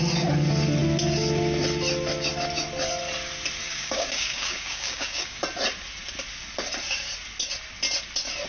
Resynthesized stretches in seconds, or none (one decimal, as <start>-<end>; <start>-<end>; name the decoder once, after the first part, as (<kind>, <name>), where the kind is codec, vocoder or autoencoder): 3.6-5.4 (codec, DAC)

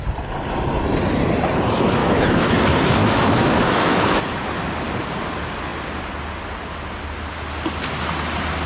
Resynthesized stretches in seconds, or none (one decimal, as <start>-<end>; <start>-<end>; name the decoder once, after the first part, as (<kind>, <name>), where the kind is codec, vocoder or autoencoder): 2.0-2.5 (autoencoder, DAC-VAE); 3.0-4.2

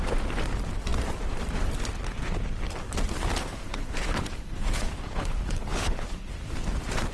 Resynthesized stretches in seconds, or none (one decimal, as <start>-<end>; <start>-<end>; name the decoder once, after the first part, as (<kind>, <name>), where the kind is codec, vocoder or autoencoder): 3.4-6.3 (codec, HILCodec)

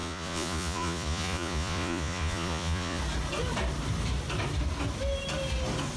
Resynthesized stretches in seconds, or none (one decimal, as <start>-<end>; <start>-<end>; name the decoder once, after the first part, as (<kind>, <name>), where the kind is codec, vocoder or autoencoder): 0.0-3.0 (vocoder, Vocos)

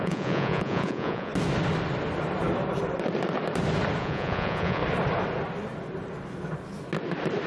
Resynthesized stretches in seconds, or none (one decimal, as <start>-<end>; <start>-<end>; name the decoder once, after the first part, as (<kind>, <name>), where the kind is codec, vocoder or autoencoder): 0.0-1.3 (vocoder, Vocos); 4.0-4.8

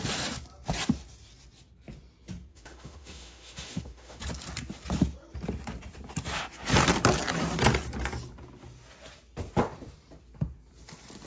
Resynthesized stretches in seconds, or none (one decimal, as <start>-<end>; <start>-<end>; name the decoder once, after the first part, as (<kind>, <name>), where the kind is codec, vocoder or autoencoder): 2.5-4.2 (autoencoder, DAC-VAE)

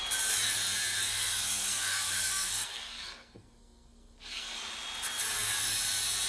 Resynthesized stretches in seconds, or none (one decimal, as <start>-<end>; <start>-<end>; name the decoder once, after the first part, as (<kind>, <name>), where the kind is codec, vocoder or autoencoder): 1.0-4.6 (codec, SNAC)